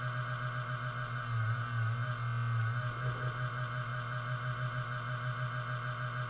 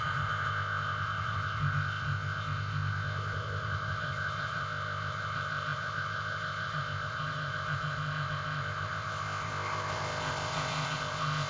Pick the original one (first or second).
first